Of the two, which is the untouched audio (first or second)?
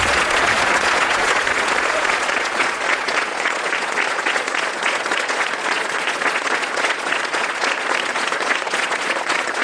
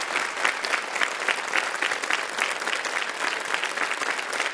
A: second